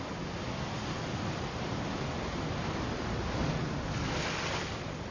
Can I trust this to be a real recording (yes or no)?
yes